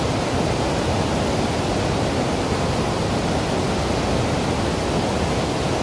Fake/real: real